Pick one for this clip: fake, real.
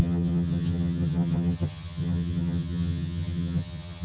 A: fake